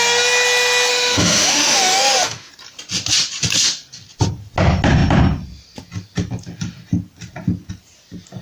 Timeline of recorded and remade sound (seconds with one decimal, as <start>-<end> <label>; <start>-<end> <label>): 0.0-0.9 recorded; 0.9-2.5 remade; 2.5-8.4 recorded